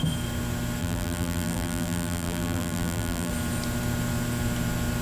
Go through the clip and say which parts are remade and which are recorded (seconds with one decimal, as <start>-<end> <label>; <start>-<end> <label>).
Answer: 0.0-0.8 recorded; 0.8-3.3 remade; 3.3-5.0 recorded